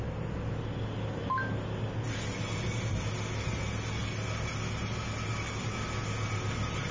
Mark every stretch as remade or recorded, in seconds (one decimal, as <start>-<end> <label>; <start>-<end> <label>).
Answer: 0.0-6.9 recorded